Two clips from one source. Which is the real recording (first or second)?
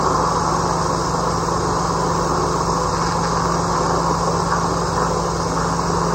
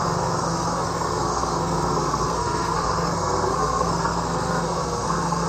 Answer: first